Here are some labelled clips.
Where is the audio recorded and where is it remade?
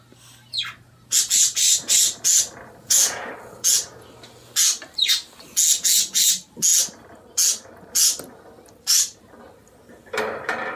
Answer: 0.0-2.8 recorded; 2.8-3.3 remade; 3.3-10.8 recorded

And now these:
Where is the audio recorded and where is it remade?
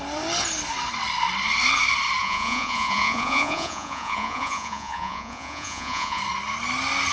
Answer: 0.0-2.2 recorded; 2.2-6.2 remade; 6.2-7.1 recorded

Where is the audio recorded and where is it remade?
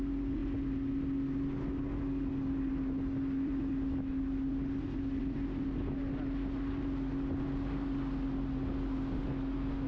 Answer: 0.0-9.9 recorded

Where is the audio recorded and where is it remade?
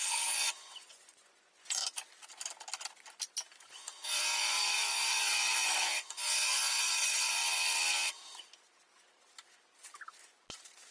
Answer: 0.0-1.8 remade; 1.8-3.6 recorded; 3.6-7.4 remade; 7.4-10.9 recorded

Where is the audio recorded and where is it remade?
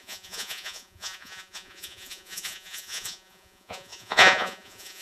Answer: 0.0-5.0 remade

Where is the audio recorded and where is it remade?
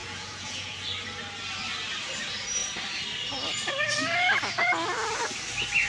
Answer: 0.0-0.8 remade; 0.8-5.9 recorded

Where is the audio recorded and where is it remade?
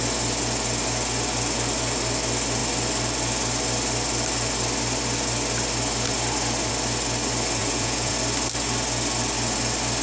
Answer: 0.0-7.6 recorded; 7.6-8.1 remade; 8.1-10.0 recorded